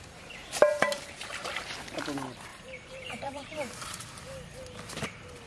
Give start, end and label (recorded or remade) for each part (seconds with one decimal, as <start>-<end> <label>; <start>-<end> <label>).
0.0-0.4 recorded; 0.4-1.4 remade; 1.4-2.5 recorded; 2.5-4.1 remade; 4.1-5.5 recorded